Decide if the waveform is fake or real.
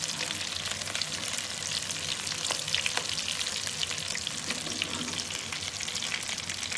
real